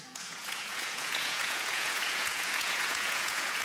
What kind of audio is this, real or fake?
fake